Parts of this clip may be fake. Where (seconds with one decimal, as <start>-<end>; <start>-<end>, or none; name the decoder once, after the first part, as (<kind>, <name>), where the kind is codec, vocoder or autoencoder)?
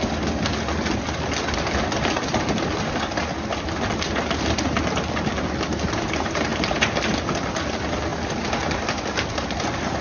none